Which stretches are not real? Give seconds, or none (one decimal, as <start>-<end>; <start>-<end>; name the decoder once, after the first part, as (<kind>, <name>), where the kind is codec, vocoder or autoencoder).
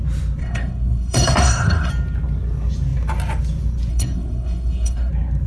0.4-1.9 (codec, SNAC); 3.9-5.1